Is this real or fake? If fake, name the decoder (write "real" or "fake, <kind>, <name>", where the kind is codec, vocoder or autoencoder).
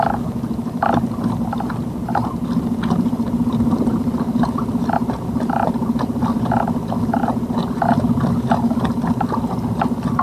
real